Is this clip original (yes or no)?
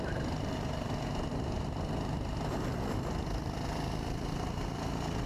yes